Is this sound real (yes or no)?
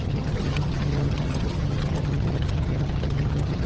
no